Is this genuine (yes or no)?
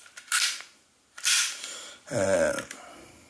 yes